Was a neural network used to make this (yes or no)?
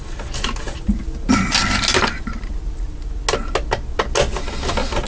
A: no